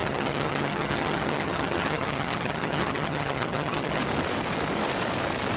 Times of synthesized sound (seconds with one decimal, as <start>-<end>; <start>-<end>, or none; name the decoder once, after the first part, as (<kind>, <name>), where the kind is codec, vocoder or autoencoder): 0.0-4.0 (vocoder, HiFi-GAN)